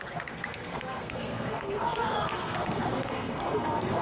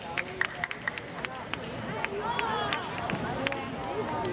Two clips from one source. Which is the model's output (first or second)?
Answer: first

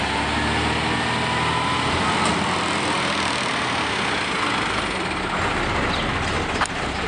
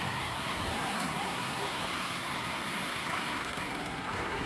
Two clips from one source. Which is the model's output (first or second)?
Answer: second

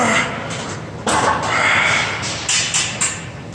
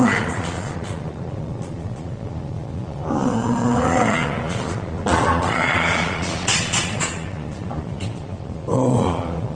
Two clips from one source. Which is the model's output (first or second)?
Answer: second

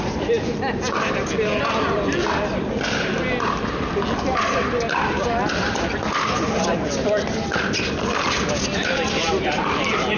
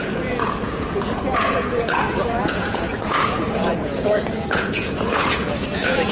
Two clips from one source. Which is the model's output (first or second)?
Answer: second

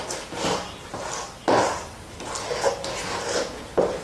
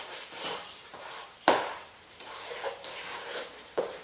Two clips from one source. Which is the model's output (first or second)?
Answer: second